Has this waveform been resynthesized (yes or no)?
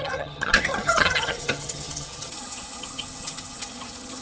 yes